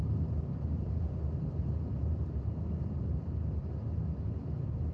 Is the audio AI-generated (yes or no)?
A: no